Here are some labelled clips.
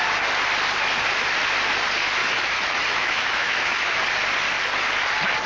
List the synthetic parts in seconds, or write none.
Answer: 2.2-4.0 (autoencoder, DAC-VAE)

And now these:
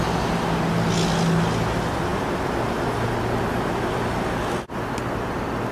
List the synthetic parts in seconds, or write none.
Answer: none

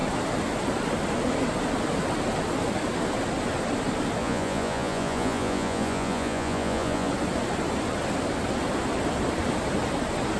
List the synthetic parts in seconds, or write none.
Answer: 4.2-7.1 (vocoder, Vocos)